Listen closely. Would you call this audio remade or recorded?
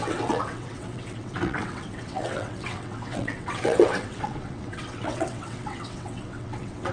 remade